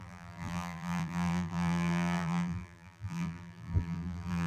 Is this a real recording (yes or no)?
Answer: no